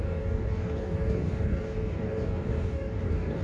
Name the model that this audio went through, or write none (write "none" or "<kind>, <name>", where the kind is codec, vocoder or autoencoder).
codec, DAC